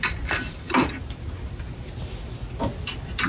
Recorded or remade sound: recorded